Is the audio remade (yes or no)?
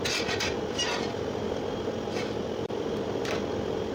yes